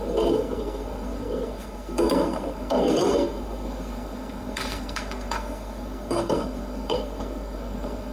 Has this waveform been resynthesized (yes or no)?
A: yes